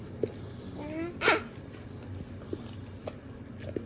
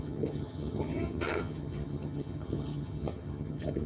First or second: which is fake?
second